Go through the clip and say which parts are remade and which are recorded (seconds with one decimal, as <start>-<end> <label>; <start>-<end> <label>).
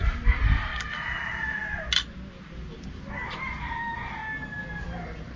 0.0-0.7 remade; 0.7-2.7 recorded; 2.7-4.2 remade; 4.2-4.8 recorded; 4.8-5.4 remade